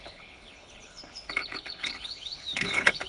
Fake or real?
fake